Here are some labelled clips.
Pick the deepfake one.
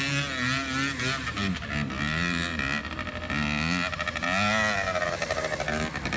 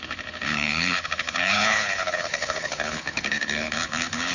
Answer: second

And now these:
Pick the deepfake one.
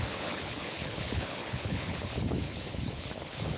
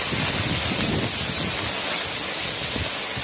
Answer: first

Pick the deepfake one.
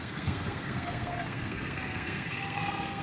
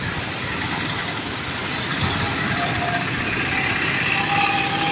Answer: first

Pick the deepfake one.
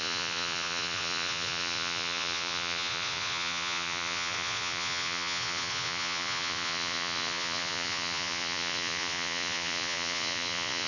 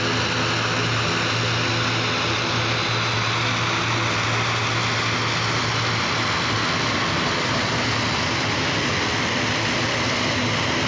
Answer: first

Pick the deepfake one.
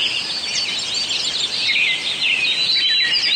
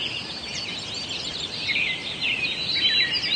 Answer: second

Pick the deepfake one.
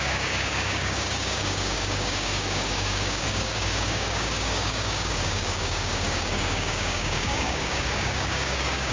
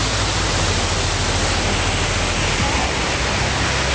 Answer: first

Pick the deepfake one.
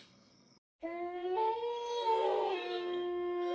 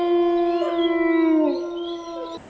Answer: first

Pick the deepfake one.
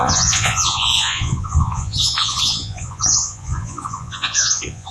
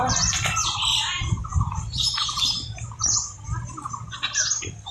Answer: first